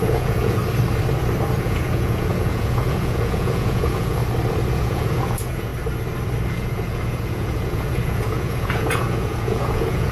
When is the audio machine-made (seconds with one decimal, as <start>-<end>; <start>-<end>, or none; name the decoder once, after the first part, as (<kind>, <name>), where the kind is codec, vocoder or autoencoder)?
0.0-0.6 (vocoder, Vocos); 1.6-4.2; 4.7-5.7; 6.5-10.1